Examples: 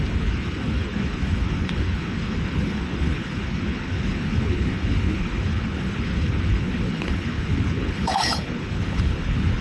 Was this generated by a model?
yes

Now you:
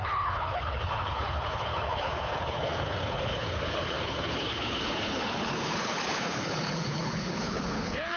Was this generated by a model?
yes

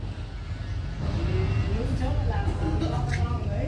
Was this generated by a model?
no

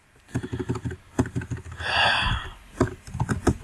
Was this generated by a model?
no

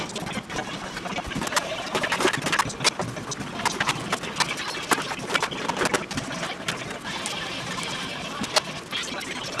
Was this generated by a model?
no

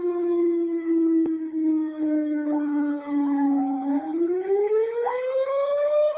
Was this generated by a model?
yes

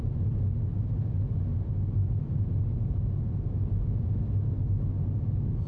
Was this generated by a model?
no